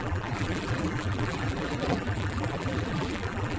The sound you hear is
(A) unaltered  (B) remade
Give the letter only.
B